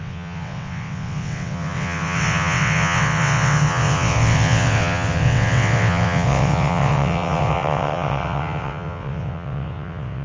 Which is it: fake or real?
fake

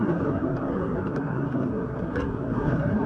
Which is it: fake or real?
fake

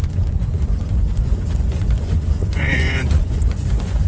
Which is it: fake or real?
fake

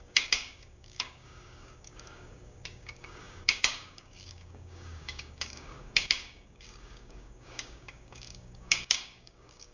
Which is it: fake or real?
fake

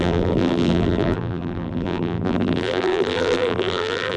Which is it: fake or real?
fake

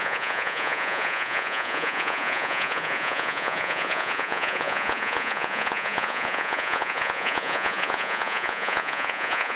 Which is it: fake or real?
fake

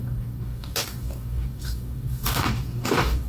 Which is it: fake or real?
fake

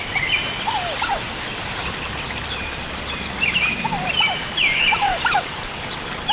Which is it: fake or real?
real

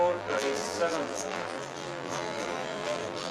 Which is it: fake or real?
fake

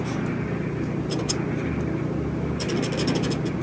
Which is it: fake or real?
real